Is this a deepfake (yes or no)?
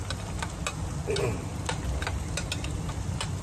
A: no